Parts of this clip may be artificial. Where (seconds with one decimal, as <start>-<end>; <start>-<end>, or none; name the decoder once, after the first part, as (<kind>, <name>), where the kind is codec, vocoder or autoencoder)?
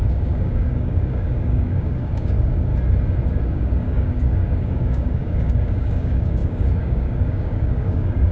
0.0-2.7 (codec, DAC); 3.4-8.3